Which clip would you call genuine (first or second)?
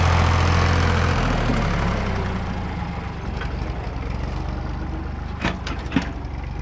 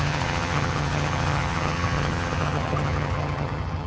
first